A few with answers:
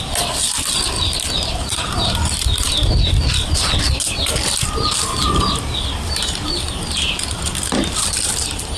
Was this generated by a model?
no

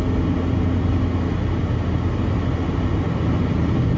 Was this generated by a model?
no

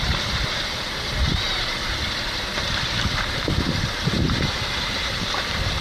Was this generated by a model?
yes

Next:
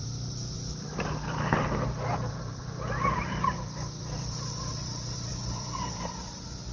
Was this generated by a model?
yes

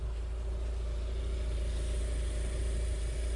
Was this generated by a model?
no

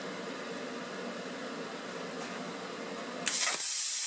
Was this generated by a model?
no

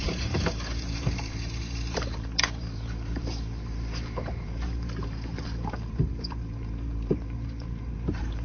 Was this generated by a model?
yes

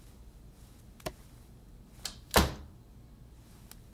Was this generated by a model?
no